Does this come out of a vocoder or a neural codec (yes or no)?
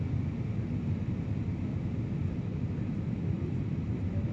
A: no